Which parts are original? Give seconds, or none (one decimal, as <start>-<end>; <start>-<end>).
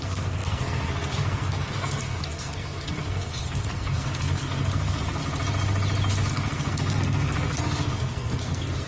5.2-6.3